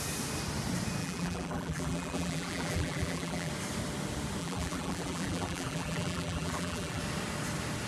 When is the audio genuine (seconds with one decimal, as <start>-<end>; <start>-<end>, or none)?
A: 0.0-1.0; 3.5-4.4; 7.0-7.9